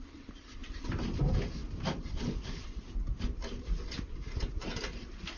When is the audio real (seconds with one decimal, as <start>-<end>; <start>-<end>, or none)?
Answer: none